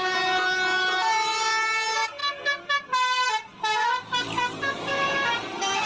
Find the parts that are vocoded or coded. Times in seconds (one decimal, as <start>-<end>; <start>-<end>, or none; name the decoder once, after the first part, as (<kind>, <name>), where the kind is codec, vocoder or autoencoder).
0.0-2.2 (vocoder, BigVGAN v2); 3.3-5.9